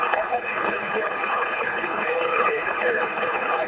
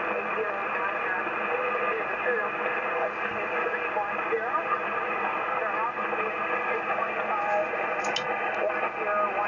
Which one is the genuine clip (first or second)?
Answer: second